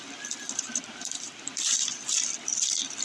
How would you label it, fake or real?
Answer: fake